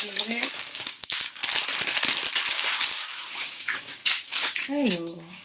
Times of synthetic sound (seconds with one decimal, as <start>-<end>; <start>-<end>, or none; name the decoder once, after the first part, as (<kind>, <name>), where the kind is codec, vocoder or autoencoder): 0.0-1.4 (codec, DAC); 2.5-5.4